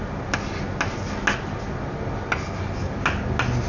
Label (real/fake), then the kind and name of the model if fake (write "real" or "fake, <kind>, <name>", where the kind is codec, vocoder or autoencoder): real